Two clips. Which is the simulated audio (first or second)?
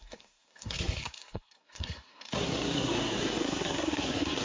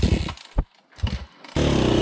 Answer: first